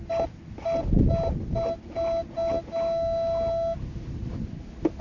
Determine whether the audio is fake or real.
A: real